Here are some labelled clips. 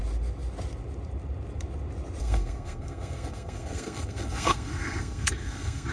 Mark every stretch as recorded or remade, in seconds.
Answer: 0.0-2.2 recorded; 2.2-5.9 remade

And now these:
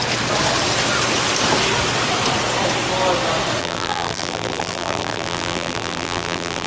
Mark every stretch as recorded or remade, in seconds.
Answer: 0.0-3.6 recorded; 3.6-6.7 remade

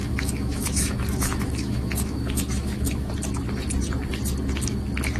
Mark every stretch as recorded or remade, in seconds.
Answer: 0.0-3.1 remade; 3.1-5.2 recorded

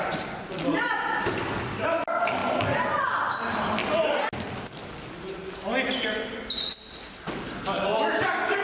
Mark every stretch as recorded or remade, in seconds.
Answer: 0.0-8.6 recorded

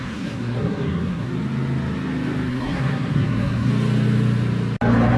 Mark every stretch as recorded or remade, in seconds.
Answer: 0.0-1.3 remade; 1.3-2.5 recorded; 2.5-3.7 remade; 3.7-5.2 recorded

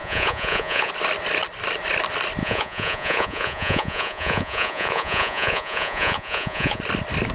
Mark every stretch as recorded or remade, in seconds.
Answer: 0.0-0.9 remade; 0.9-2.4 recorded; 2.4-6.8 remade; 6.8-7.3 recorded

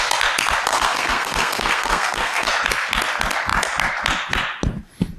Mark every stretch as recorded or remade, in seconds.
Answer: 0.0-0.7 recorded; 0.7-2.5 remade; 2.5-5.2 recorded